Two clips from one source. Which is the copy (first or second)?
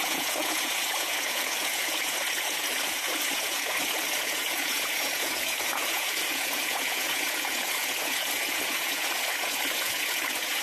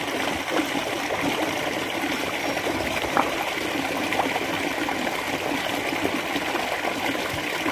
first